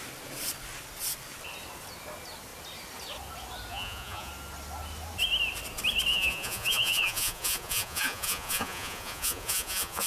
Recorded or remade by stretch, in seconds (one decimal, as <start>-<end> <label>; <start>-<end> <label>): 0.0-3.7 recorded; 3.7-4.3 remade; 4.3-6.1 recorded; 6.1-10.1 remade